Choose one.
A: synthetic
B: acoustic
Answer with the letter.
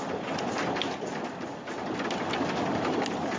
B